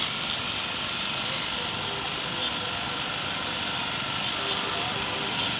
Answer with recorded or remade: recorded